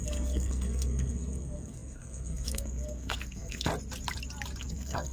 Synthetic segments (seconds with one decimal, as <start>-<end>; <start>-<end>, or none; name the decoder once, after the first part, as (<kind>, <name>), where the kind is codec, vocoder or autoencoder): 0.0-3.7 (codec, SNAC); 4.6-5.1